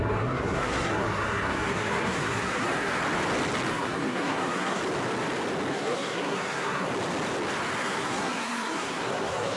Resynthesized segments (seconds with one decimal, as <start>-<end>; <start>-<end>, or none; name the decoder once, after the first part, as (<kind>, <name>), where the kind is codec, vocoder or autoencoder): 0.0-3.0 (codec, SNAC); 3.7-4.8; 5.7-6.9; 7.8-9.6